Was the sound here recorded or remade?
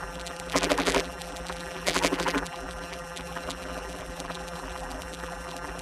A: remade